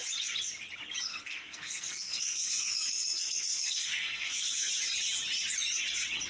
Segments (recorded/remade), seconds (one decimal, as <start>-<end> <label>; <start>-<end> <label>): 0.0-1.1 recorded; 1.1-4.7 remade; 4.7-6.3 recorded